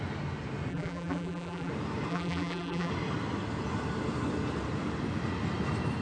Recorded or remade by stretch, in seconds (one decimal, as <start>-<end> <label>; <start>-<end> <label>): 0.0-0.7 recorded; 0.7-1.7 remade; 1.7-2.1 recorded; 2.1-2.9 remade; 2.9-6.0 recorded